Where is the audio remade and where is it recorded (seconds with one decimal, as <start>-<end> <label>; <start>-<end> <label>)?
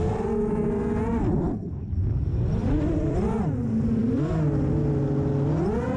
0.0-2.6 recorded; 2.6-3.3 remade; 3.3-6.0 recorded